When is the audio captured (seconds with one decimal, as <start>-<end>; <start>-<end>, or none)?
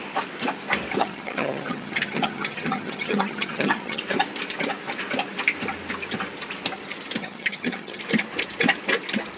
0.0-1.0; 4.0-7.2; 8.0-9.4